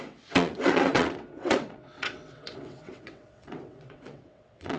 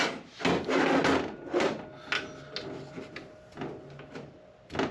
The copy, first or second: first